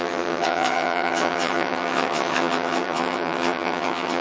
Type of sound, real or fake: fake